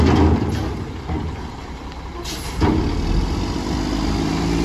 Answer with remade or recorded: recorded